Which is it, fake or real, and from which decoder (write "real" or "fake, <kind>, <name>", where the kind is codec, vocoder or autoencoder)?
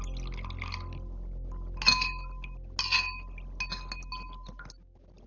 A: real